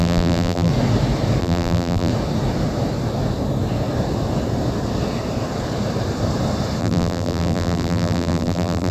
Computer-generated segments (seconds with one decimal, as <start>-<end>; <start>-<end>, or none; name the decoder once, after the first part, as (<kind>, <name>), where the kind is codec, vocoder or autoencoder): 0.0-0.7 (vocoder, BigVGAN v2); 1.4-2.1; 6.8-8.9